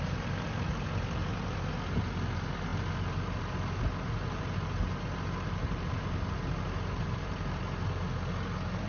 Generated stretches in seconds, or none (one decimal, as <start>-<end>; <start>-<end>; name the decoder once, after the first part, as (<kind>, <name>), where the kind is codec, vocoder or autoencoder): none